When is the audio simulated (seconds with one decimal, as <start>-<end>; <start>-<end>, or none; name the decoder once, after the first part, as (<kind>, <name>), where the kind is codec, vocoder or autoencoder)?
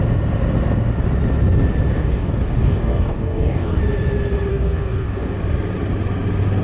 1.9-3.8 (codec, DAC); 4.5-5.4